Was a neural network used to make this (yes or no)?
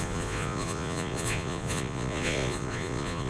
yes